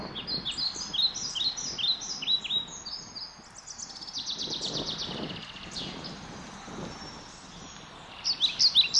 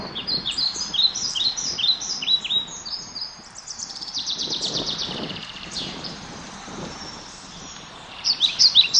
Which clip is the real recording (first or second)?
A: first